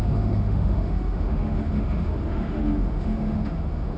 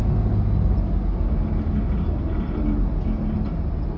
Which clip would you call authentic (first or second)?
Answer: second